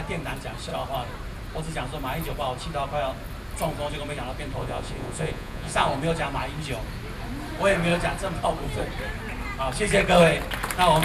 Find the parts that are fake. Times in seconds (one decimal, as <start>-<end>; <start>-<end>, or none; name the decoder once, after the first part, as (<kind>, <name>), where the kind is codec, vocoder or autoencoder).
4.6-5.9 (vocoder, Vocos)